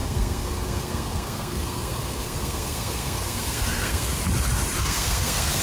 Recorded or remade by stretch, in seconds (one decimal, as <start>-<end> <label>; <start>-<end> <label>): 0.0-4.2 remade; 4.2-4.8 recorded; 4.8-5.6 remade